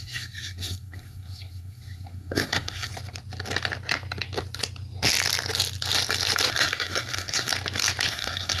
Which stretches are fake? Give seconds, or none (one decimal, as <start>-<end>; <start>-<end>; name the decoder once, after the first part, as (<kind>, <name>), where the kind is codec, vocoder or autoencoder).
0.0-2.9 (codec, SNAC); 6.5-7.5; 8.1-8.6